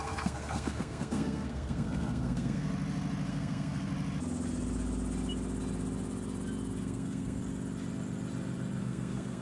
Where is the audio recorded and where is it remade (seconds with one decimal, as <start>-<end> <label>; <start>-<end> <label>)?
0.0-2.7 remade; 2.7-3.3 recorded; 3.3-3.9 remade; 3.9-6.8 recorded; 6.8-7.4 remade; 7.4-8.8 recorded; 8.8-9.4 remade